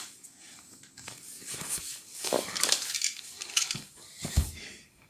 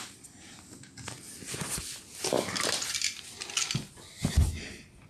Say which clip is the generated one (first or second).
first